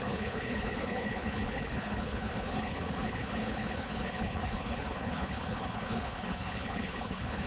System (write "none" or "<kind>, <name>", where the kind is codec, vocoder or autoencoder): codec, HILCodec